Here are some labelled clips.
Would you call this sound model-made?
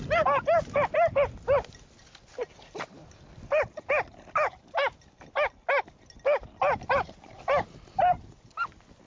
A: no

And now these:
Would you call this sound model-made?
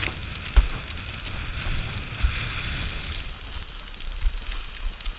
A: no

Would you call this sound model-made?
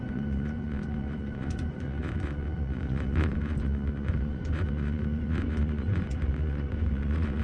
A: yes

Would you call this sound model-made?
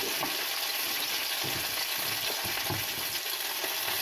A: no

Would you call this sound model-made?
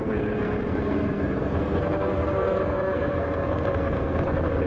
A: yes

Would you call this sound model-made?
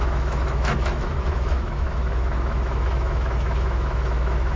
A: yes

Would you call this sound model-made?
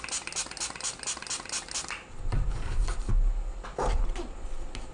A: no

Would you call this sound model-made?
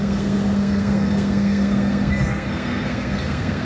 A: yes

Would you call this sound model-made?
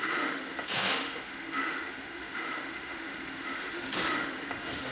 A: yes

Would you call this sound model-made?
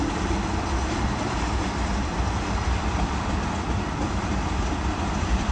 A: yes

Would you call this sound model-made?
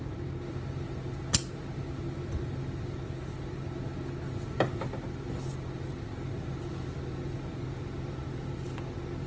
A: no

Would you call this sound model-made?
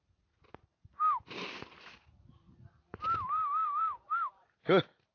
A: yes